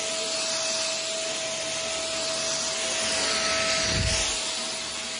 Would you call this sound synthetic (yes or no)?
no